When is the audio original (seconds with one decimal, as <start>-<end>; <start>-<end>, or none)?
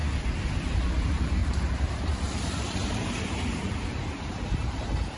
0.0-0.6